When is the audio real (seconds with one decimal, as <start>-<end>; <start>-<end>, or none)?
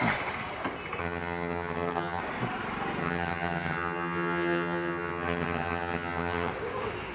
0.0-1.0; 2.2-3.0; 6.5-7.1